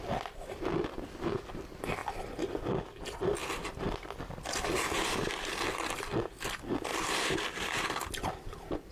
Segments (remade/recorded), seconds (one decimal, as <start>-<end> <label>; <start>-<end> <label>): 0.0-6.9 recorded; 6.9-8.9 remade